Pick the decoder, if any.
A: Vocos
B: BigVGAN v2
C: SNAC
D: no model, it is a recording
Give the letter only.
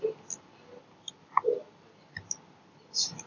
D